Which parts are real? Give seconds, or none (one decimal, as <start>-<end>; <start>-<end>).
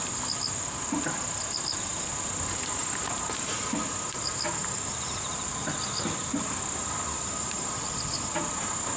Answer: 0.0-9.0